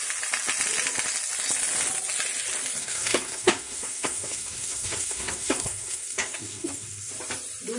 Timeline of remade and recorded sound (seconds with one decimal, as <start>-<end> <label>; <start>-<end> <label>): 0.0-2.8 recorded; 2.8-7.1 remade; 7.1-7.8 recorded